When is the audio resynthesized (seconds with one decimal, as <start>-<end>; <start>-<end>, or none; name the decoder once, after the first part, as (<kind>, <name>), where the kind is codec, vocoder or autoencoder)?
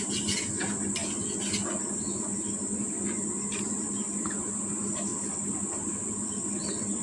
none